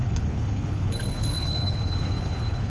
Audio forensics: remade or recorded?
remade